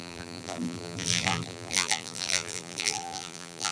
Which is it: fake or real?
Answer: fake